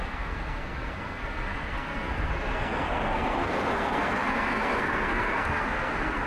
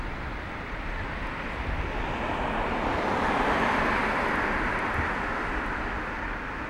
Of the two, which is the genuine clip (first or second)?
second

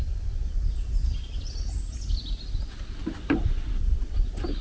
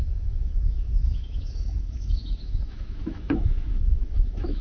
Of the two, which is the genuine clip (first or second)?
first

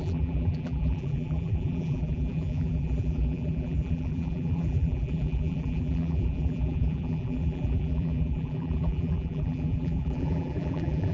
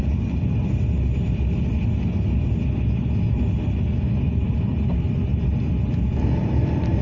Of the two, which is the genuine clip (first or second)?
second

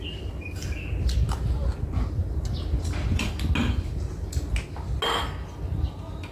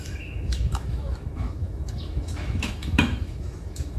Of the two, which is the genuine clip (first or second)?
first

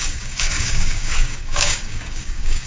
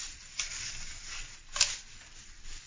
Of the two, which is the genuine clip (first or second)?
second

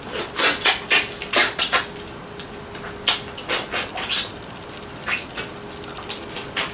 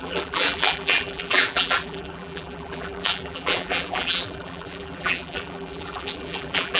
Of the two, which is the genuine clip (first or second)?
first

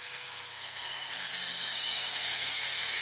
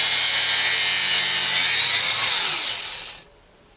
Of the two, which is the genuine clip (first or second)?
second